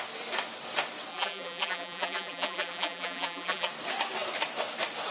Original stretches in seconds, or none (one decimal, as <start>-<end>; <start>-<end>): 0.0-1.1; 3.7-5.1